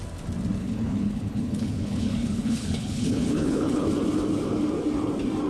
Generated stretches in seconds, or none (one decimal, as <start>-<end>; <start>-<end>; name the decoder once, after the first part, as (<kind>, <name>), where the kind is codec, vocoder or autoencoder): 0.6-3.9 (codec, HILCodec)